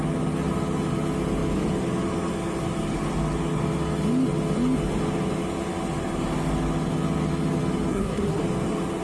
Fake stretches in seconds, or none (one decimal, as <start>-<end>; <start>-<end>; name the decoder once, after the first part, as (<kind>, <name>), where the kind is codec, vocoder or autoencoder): 7.9-8.4 (codec, SNAC)